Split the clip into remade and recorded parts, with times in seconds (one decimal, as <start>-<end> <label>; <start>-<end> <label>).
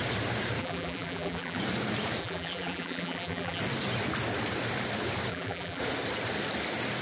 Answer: 0.0-0.6 recorded; 0.6-1.6 remade; 1.6-2.2 recorded; 2.2-3.6 remade; 3.6-5.3 recorded; 5.3-5.8 remade; 5.8-7.0 recorded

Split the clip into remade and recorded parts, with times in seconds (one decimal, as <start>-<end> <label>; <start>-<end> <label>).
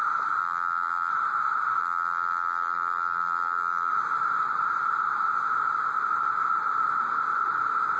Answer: 0.0-0.4 recorded; 0.4-1.1 remade; 1.1-1.8 recorded; 1.8-3.9 remade; 3.9-8.0 recorded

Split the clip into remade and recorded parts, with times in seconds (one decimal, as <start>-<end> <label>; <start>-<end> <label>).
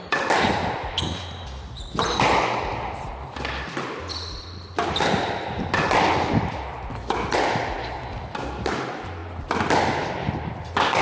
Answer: 0.0-11.0 remade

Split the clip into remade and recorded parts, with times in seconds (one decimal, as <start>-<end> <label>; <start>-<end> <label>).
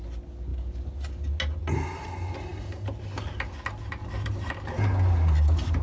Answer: 0.0-4.0 recorded; 4.0-4.5 remade; 4.5-5.8 recorded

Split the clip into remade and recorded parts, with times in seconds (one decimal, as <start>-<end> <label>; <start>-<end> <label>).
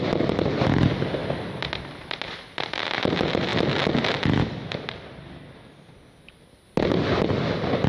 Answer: 0.0-1.2 recorded; 1.2-2.9 remade; 2.9-7.9 recorded